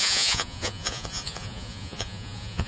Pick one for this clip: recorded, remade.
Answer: remade